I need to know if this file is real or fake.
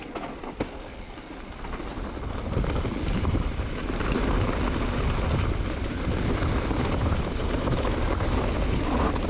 real